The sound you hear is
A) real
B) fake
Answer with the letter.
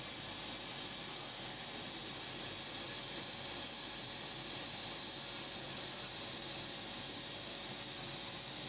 A